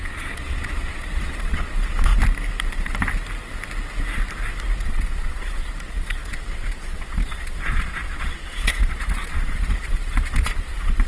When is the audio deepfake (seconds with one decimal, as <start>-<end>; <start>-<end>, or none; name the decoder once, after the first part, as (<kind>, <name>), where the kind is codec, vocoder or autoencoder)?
0.0-2.1 (vocoder, Vocos); 2.7-3.1; 4.8-11.1